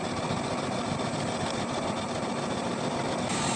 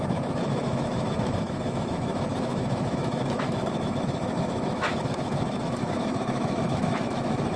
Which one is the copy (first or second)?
second